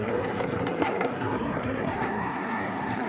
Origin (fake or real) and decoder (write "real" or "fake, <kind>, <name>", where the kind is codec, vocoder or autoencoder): fake, codec, SNAC